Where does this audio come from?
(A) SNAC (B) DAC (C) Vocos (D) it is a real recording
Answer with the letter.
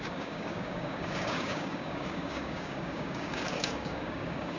B